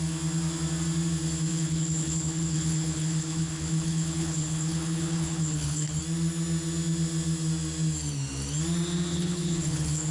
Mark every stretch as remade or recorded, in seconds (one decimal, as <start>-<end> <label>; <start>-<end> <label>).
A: 0.0-1.5 recorded; 1.5-6.0 remade; 6.0-9.1 recorded; 9.1-10.1 remade